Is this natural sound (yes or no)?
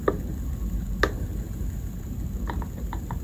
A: yes